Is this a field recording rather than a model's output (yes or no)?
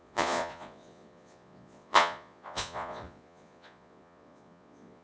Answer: no